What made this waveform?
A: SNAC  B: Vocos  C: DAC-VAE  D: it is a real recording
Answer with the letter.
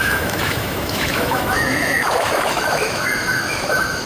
C